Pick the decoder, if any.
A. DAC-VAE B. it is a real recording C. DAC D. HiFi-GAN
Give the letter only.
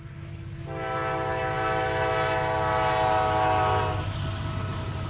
B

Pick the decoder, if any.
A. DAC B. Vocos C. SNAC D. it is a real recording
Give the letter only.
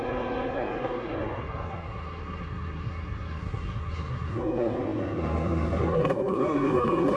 C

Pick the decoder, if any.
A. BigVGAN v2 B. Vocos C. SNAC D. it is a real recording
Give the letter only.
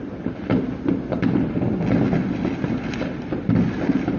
D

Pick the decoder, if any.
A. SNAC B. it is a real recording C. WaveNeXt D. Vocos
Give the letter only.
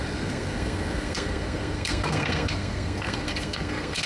A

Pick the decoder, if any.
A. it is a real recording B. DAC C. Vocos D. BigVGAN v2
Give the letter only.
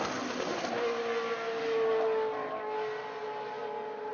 A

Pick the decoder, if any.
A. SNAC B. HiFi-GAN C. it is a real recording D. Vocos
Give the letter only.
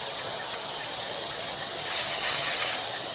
B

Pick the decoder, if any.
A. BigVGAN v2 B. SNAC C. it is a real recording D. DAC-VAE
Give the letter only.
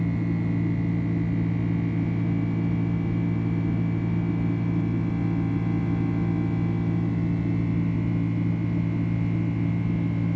C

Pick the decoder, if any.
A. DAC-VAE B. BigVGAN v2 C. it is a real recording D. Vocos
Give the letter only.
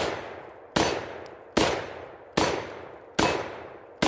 C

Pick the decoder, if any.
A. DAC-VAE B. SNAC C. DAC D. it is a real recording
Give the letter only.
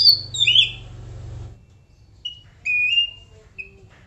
D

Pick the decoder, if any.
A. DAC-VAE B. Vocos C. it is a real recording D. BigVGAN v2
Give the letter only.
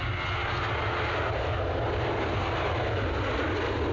C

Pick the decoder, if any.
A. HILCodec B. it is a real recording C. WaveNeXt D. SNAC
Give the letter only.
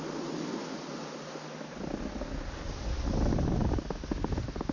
B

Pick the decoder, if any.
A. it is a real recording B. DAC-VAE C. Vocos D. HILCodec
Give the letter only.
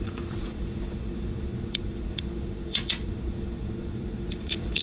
C